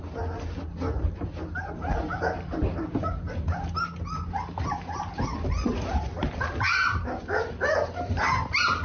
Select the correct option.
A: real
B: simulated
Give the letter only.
A